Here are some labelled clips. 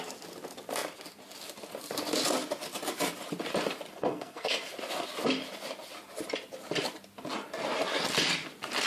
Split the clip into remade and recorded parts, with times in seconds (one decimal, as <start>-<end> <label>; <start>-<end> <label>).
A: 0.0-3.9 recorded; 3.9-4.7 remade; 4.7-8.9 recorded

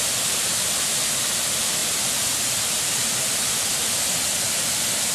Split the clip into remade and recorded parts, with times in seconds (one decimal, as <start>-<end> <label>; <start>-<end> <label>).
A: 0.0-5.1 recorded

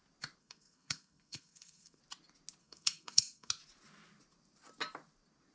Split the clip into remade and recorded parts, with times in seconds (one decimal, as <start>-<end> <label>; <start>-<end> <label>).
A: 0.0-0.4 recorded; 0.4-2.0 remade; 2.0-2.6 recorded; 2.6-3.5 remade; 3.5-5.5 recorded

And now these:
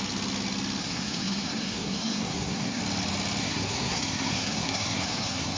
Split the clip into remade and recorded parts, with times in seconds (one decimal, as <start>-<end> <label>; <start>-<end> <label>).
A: 0.0-0.8 recorded; 0.8-2.8 remade; 2.8-3.4 recorded; 3.4-5.6 remade

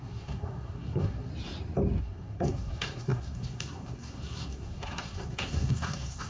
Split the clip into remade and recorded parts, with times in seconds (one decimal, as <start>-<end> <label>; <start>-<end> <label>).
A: 0.0-1.3 remade; 1.3-2.0 recorded; 2.0-6.3 remade